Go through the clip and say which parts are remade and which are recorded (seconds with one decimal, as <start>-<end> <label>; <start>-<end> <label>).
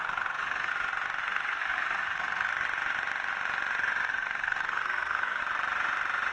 0.0-0.7 remade; 0.7-1.2 recorded; 1.2-2.5 remade; 2.5-4.1 recorded; 4.1-5.4 remade; 5.4-6.3 recorded